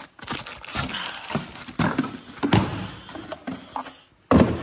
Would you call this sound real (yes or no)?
yes